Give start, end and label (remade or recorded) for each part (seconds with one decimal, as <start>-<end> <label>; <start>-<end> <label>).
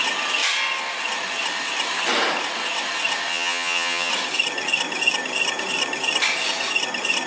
0.0-3.3 recorded; 3.3-4.1 remade; 4.1-7.3 recorded